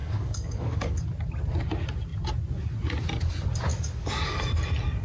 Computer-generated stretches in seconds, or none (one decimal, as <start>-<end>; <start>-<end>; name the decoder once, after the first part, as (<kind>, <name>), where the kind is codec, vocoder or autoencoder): 0.0-1.0 (codec, DAC); 3.7-4.6